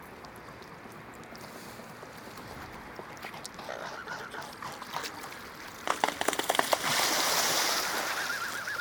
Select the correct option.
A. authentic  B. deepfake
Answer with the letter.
A